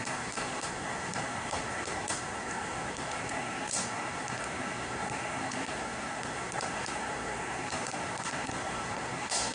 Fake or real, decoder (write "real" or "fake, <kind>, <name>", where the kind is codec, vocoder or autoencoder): fake, codec, SNAC